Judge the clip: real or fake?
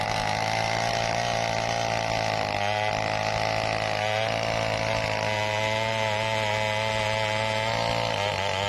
real